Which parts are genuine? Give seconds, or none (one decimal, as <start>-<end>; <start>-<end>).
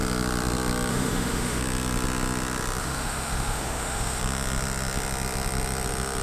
0.0-0.9; 1.6-2.8; 4.2-6.2